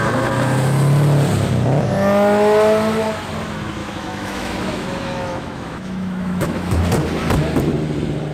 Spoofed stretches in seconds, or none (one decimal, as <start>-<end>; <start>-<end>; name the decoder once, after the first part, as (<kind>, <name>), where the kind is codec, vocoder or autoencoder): 3.8-6.8 (autoencoder, DAC-VAE)

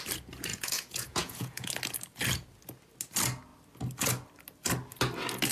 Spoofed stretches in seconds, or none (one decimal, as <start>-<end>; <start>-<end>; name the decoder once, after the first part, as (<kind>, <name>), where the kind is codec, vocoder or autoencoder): 0.5-1.7 (vocoder, Vocos)

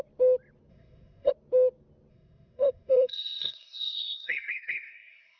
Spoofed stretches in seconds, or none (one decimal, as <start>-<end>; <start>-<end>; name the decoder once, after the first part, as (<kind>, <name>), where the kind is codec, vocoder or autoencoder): 0.7-1.3 (codec, SNAC); 2.1-5.4